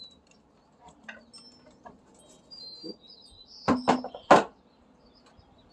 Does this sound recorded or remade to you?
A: recorded